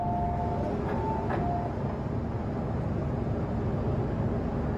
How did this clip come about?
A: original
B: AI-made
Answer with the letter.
A